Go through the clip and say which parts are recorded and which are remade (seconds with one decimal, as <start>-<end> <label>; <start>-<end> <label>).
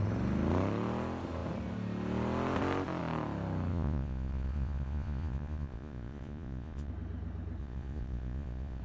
0.0-3.7 recorded; 3.7-6.9 remade; 6.9-7.6 recorded; 7.6-8.8 remade